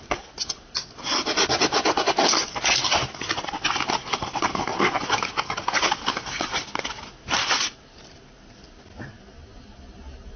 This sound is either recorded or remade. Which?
recorded